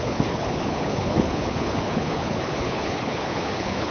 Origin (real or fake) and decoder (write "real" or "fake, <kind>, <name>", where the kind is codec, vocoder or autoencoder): fake, codec, HILCodec